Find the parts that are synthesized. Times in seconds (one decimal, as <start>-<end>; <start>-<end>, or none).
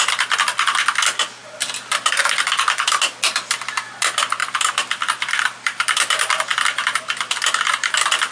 none